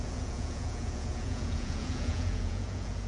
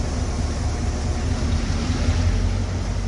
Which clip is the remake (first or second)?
first